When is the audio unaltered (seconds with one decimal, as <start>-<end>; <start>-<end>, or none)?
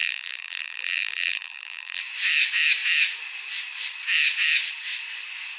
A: 2.0-5.6